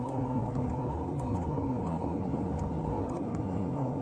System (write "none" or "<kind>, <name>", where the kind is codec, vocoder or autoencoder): codec, SNAC